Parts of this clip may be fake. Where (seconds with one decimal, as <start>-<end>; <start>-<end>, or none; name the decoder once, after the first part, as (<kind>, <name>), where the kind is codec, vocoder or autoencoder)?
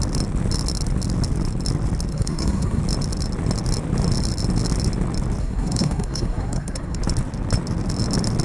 2.1-2.8 (codec, SNAC); 5.4-7.0